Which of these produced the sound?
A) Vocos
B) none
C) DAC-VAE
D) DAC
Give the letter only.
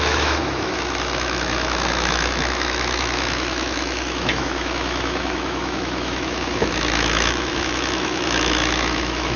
C